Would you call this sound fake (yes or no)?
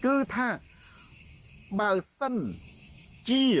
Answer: yes